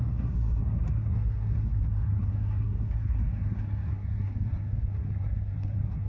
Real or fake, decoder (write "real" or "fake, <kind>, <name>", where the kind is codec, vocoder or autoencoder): fake, codec, SNAC